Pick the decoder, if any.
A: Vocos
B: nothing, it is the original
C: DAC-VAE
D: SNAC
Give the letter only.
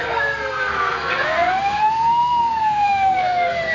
D